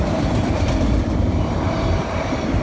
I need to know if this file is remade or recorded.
recorded